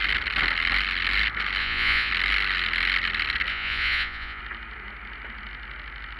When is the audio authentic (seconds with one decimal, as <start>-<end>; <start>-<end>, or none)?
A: 0.0-1.6; 2.1-3.5; 4.4-6.2